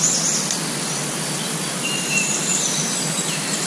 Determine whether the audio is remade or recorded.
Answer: recorded